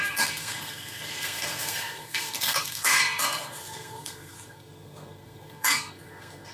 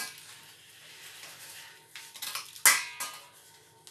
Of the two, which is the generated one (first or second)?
first